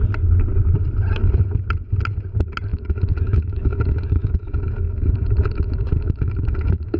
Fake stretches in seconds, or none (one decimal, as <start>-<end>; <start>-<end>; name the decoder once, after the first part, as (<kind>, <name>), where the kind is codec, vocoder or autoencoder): 2.7-7.0 (autoencoder, DAC-VAE)